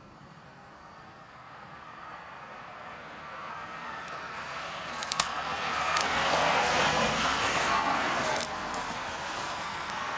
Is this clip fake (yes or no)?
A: yes